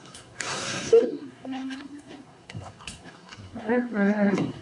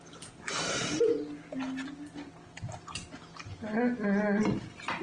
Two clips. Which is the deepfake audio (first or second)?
first